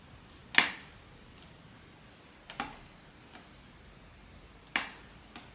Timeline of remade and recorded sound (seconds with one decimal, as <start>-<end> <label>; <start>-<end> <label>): 0.0-4.1 recorded; 4.1-4.6 remade; 4.6-5.5 recorded